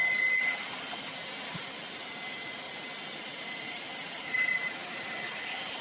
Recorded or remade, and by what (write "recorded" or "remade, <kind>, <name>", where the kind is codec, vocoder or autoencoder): recorded